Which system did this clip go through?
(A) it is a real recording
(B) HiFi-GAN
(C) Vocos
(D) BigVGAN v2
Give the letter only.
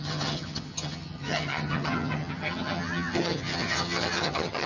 B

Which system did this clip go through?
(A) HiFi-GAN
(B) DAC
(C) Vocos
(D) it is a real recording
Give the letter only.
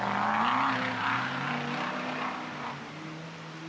D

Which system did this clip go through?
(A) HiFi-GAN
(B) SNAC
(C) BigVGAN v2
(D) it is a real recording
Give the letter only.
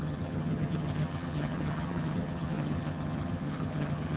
A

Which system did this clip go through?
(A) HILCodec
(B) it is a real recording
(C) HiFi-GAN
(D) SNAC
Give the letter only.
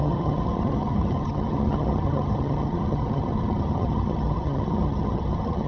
C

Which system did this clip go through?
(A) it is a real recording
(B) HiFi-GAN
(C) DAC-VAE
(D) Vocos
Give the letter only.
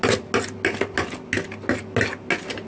A